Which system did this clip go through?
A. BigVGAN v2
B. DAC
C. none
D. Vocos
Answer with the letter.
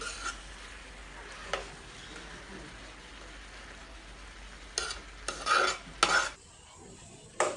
C